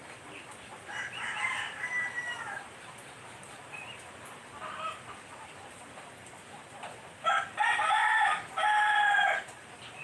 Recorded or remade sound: remade